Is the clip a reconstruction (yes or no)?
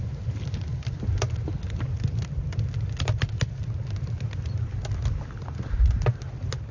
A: no